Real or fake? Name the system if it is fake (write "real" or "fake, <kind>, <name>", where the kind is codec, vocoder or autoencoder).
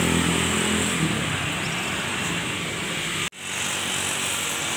real